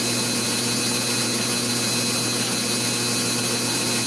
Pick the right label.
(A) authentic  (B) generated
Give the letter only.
A